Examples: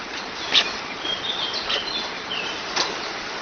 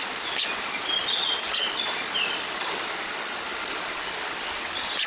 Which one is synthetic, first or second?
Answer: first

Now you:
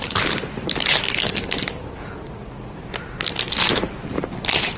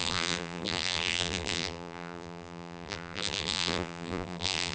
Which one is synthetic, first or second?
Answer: second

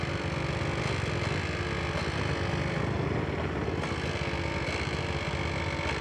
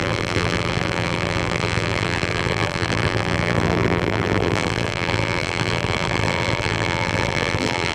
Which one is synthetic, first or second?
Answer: second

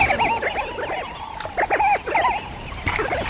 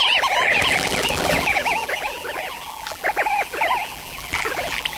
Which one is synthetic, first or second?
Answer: second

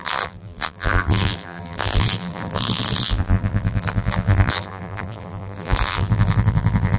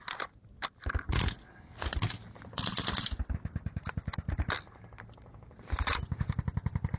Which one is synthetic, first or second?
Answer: first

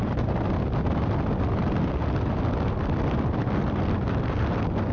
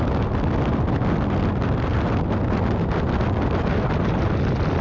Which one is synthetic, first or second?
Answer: first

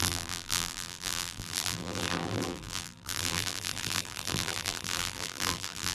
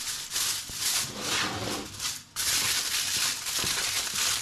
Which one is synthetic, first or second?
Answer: first